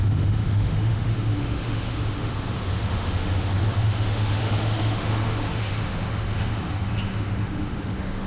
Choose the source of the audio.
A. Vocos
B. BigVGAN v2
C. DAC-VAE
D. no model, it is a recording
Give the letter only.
C